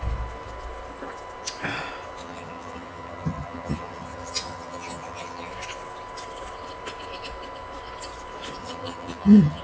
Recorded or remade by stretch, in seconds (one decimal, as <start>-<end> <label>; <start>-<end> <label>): 0.0-2.2 recorded; 2.2-5.5 remade; 5.5-8.6 recorded; 8.6-9.6 remade